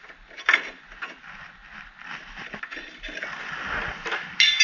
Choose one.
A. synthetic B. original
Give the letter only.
B